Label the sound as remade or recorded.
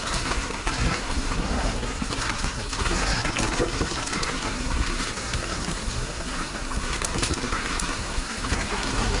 remade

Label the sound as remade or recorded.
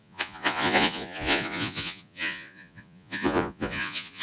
remade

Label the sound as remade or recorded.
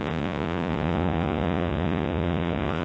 remade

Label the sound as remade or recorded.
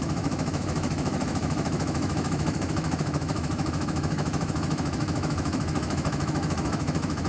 remade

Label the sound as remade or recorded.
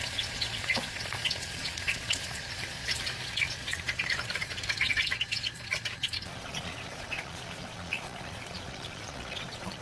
remade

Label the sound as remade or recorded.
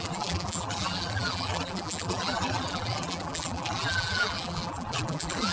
remade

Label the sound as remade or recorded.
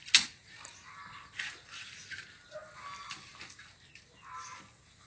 recorded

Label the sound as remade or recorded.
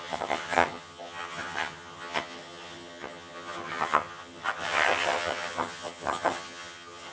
remade